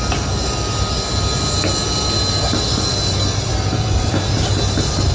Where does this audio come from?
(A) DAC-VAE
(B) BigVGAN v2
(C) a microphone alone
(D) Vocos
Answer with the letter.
C